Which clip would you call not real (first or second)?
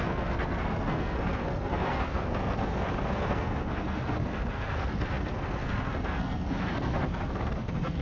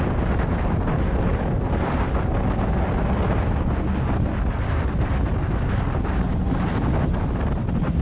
first